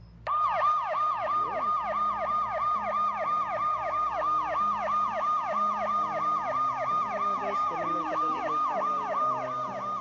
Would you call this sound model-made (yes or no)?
no